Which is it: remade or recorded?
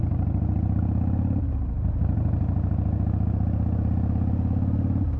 recorded